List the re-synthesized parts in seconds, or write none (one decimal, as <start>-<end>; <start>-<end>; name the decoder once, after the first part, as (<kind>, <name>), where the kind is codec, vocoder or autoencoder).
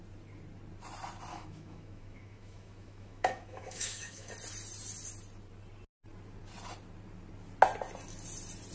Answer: 1.3-4.3 (autoencoder, DAC-VAE)